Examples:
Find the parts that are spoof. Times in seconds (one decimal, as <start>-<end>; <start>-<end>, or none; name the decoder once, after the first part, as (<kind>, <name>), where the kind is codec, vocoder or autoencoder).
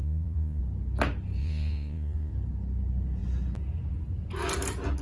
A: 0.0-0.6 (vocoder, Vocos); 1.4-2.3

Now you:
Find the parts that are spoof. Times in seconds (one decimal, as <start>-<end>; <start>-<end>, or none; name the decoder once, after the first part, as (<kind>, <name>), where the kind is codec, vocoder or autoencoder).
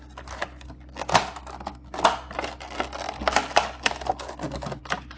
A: none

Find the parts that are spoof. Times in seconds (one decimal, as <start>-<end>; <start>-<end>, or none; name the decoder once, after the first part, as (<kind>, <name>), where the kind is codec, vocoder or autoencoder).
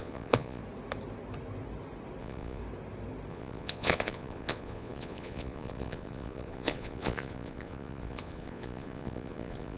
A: 0.0-0.6 (vocoder, Vocos); 2.2-2.6; 3.3-9.8